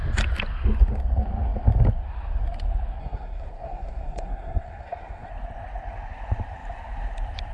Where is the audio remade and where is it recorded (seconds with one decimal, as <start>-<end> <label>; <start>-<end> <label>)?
0.0-3.0 recorded; 3.0-5.3 remade; 5.3-7.5 recorded